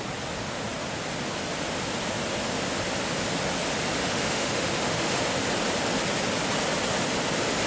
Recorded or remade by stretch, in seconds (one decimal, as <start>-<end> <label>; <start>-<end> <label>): 0.0-4.0 recorded; 4.0-5.2 remade; 5.2-7.7 recorded